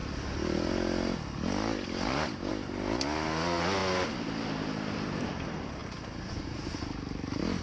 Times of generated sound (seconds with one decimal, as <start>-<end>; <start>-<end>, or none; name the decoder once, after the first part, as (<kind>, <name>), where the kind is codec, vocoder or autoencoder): none